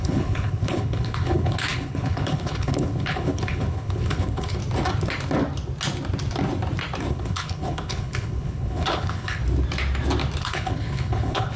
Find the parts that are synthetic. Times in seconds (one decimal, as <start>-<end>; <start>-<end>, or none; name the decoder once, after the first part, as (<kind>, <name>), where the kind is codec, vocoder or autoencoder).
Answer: 0.0-4.6 (codec, HILCodec); 7.1-9.4; 10.4-11.6